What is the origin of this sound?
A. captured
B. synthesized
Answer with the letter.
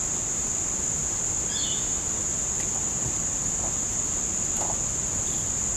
A